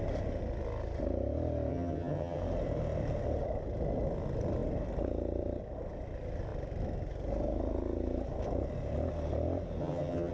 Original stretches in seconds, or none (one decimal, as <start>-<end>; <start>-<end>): 0.0-1.7; 2.4-9.8